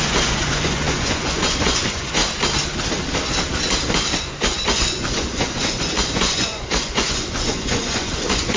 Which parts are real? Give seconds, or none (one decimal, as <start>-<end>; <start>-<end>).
2.2-4.2